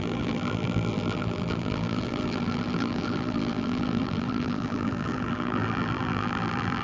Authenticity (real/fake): fake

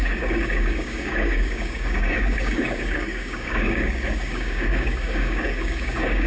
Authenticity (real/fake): fake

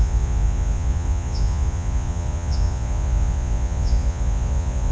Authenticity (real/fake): fake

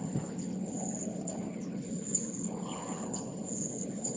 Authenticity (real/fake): fake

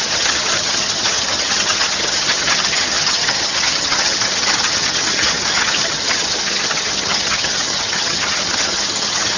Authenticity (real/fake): fake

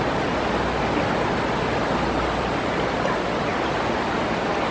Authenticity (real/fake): real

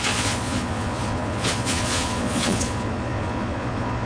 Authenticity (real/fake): fake